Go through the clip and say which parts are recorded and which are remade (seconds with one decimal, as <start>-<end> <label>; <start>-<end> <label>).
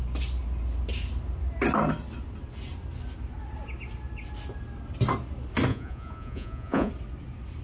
0.0-5.7 recorded; 5.7-6.9 remade; 6.9-7.6 recorded